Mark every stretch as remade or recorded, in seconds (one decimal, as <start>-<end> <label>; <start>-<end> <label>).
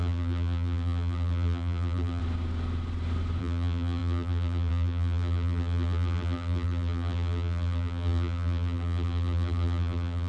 0.0-2.2 remade; 2.2-3.4 recorded; 3.4-10.3 remade